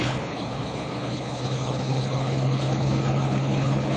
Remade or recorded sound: remade